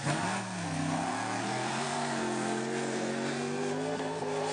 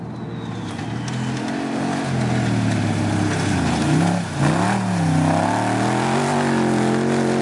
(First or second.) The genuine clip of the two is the second